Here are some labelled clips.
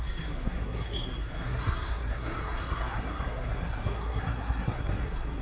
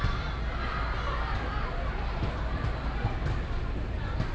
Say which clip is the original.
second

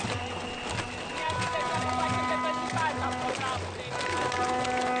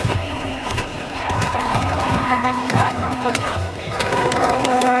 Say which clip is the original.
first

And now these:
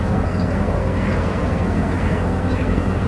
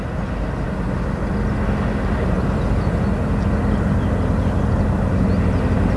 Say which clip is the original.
second